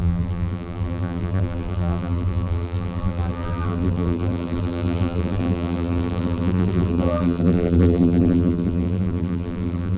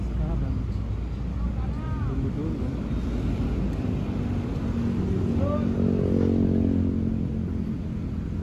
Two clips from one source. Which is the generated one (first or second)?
first